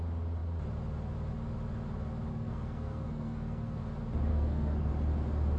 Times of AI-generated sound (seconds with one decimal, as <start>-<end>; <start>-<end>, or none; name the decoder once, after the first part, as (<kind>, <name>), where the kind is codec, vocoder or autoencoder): 2.3-3.8 (codec, SNAC); 4.3-4.9